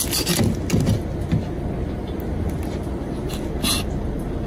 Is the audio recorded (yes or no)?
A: yes